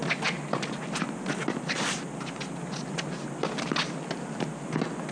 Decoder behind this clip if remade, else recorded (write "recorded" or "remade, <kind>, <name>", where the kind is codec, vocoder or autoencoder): recorded